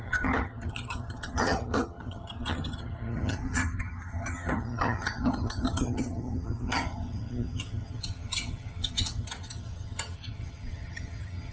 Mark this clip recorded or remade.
remade